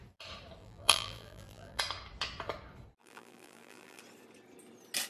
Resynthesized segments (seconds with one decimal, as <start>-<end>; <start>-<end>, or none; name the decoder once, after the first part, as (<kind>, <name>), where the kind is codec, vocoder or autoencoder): 0.6-1.8 (vocoder, BigVGAN v2); 3.0-4.0